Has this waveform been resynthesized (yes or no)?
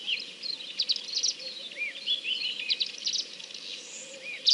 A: no